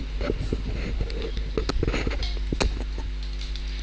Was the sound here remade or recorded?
recorded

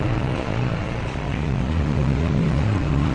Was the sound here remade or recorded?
remade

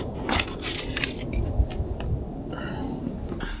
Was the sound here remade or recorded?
recorded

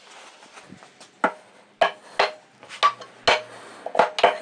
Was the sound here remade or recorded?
recorded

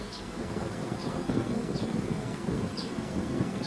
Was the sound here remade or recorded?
remade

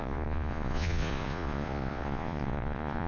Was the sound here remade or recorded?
remade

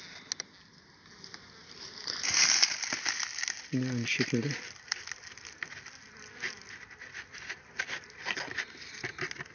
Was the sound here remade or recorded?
recorded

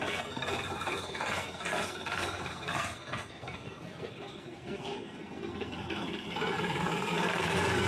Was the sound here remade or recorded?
remade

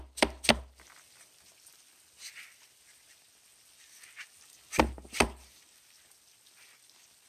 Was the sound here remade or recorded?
recorded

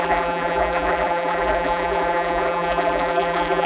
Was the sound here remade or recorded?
remade